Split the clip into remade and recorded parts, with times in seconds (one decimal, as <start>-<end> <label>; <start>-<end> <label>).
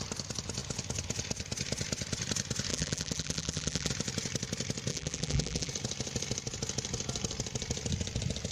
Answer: 0.0-2.7 recorded; 2.7-3.9 remade; 3.9-4.9 recorded; 4.9-5.7 remade; 5.7-8.5 recorded